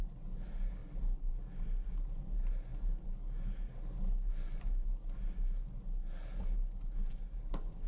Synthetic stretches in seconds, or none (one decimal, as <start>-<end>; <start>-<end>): none